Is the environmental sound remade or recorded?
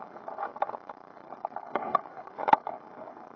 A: remade